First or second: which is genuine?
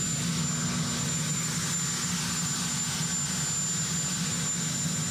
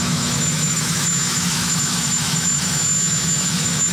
first